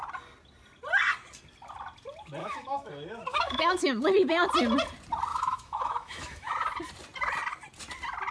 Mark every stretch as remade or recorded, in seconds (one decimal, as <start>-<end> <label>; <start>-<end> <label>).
0.0-2.4 recorded; 2.4-2.9 remade; 2.9-3.3 recorded; 3.3-4.0 remade; 4.0-5.3 recorded; 5.3-6.5 remade; 6.5-8.3 recorded